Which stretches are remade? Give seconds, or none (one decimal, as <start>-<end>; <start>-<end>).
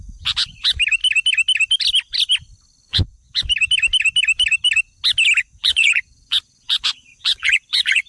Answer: 2.9-3.4; 5.4-8.1